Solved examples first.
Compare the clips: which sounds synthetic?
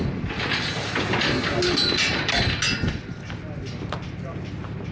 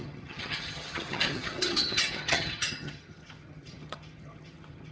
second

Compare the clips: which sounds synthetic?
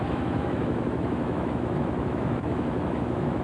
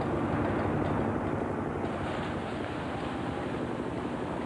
first